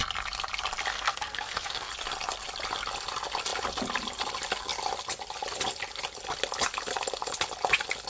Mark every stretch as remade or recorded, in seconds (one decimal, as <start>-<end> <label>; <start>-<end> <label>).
0.0-0.9 recorded; 0.9-1.9 remade; 1.9-8.1 recorded